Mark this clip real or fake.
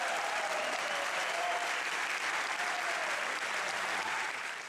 fake